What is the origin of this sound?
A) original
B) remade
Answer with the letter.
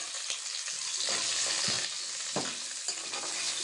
A